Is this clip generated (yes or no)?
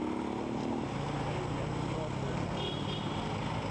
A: no